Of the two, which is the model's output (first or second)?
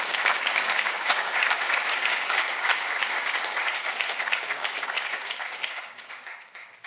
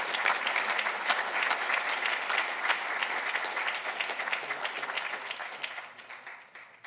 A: first